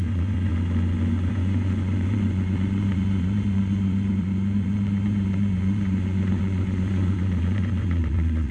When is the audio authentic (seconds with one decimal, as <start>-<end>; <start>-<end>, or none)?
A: 0.5-1.3

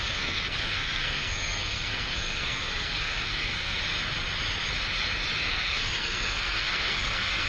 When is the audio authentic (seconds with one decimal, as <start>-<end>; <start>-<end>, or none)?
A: 3.8-5.5

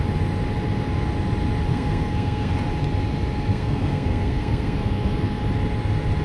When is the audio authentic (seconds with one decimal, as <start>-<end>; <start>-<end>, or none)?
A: 0.0-1.7; 2.5-3.5; 5.4-6.2

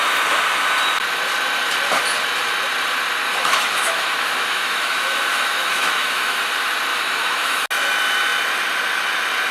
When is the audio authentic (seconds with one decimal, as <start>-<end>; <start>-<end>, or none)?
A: 0.0-3.2; 6.4-6.9; 7.6-9.5

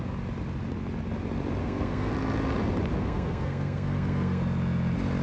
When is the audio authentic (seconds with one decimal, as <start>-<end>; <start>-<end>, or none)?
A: 0.0-1.6; 2.1-3.0; 4.4-5.2

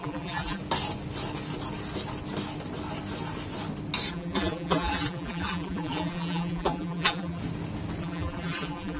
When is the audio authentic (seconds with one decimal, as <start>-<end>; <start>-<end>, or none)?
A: 0.6-4.1; 7.4-8.0

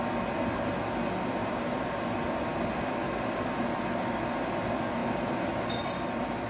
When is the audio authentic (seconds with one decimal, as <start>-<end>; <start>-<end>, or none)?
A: 0.0-1.4; 2.0-5.0; 5.7-6.5

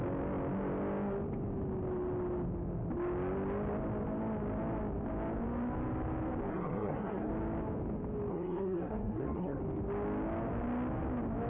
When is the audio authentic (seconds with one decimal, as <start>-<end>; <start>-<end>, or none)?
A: 0.0-6.5; 7.3-8.3; 9.6-11.5